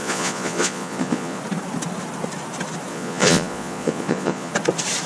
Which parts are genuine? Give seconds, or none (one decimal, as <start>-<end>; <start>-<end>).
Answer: 1.4-2.9; 4.5-5.1